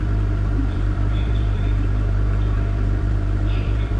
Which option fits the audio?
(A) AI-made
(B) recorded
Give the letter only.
A